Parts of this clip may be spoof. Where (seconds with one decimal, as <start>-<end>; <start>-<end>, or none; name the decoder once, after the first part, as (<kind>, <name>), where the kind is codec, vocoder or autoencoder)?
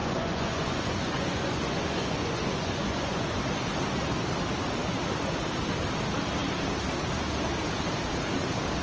0.0-3.4 (vocoder, Vocos)